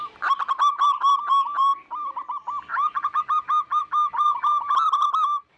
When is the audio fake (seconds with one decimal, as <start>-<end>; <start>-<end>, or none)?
none